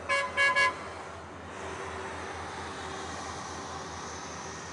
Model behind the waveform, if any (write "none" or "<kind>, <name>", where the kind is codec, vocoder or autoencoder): none